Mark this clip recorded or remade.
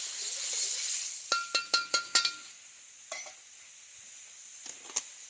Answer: recorded